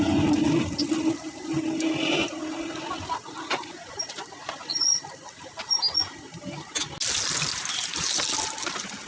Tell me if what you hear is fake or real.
real